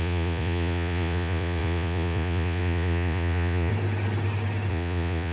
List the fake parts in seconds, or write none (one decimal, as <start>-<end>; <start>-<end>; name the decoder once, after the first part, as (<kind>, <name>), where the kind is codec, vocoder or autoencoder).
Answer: 0.0-3.7 (vocoder, Vocos); 4.7-5.3